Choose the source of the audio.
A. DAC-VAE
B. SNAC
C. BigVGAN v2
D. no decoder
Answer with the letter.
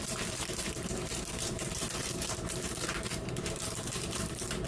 C